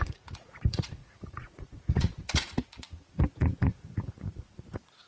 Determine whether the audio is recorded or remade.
remade